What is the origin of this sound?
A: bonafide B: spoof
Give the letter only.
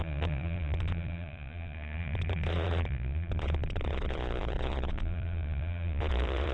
B